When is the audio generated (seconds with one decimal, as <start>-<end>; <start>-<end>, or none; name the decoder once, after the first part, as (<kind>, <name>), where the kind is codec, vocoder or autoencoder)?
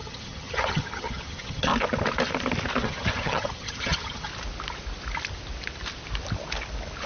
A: 0.0-1.7 (vocoder, HiFi-GAN); 2.8-4.3